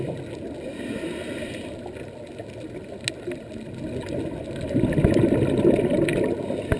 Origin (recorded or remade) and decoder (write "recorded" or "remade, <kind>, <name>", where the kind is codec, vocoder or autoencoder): recorded